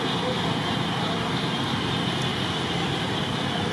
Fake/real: real